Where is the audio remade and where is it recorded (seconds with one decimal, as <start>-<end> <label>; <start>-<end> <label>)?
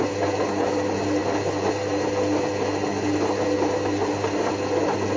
0.0-5.2 recorded